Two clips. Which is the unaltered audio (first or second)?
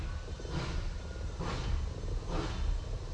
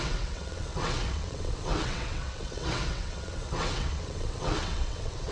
first